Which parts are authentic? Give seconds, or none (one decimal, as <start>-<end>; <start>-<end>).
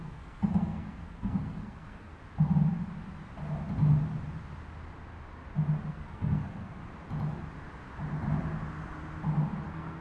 2.1-5.9; 6.8-9.6